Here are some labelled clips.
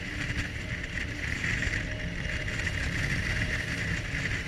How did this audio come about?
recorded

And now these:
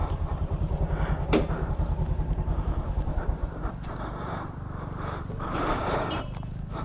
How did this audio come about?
remade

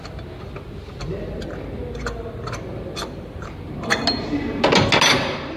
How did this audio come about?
recorded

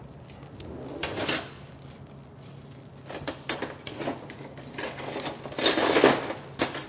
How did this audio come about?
recorded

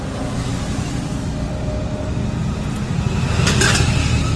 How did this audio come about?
recorded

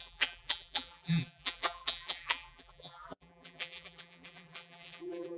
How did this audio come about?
remade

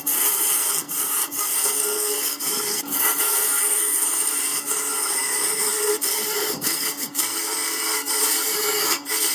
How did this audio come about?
remade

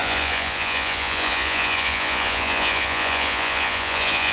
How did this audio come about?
remade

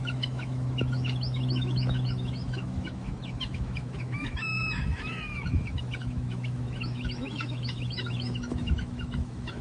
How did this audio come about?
remade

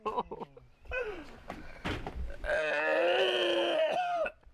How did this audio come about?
recorded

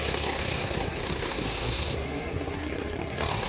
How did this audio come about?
remade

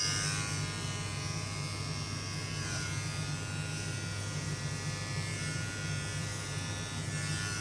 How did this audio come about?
remade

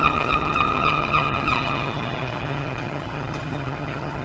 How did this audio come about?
remade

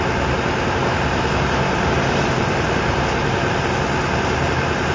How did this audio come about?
recorded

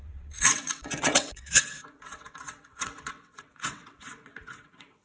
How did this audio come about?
remade